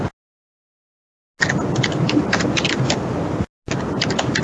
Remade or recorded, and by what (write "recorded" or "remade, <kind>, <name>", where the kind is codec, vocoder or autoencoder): recorded